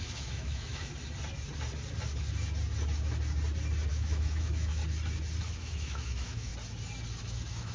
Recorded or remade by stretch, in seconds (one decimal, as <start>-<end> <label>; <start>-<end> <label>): 0.0-0.9 remade; 0.9-3.9 recorded; 3.9-4.8 remade; 4.8-5.4 recorded; 5.4-6.5 remade; 6.5-7.2 recorded; 7.2-7.7 remade

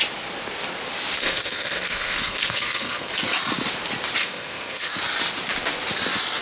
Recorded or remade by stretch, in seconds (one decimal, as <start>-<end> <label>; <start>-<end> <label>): 0.0-1.2 recorded; 1.2-3.1 remade; 3.1-4.2 recorded; 4.2-4.9 remade; 4.9-6.4 recorded

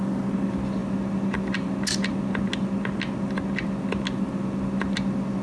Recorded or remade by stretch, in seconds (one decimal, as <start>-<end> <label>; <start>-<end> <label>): 0.0-5.4 recorded

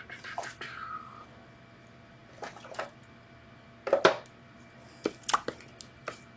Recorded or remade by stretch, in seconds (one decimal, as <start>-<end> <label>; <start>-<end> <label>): 0.0-6.4 recorded

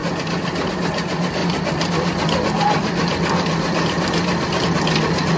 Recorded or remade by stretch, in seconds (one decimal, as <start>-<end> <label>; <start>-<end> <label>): 0.0-5.4 recorded

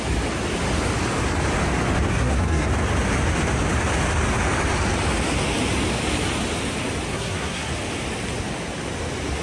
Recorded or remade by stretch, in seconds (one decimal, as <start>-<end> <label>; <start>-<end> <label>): 0.0-2.1 recorded; 2.1-2.7 remade; 2.7-7.1 recorded; 7.1-7.7 remade; 7.7-9.4 recorded

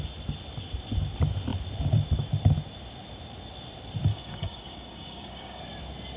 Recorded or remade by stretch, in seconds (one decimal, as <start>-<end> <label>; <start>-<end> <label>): 0.0-4.1 recorded; 4.1-5.6 remade; 5.6-6.2 recorded

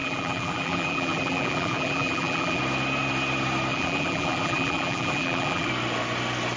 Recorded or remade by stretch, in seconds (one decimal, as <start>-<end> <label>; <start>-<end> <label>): 0.0-2.6 remade; 2.6-3.7 recorded; 3.7-5.7 remade; 5.7-6.6 recorded